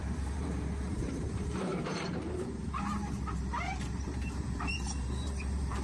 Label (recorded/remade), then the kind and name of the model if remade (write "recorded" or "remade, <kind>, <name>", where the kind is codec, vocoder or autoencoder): remade, vocoder, BigVGAN v2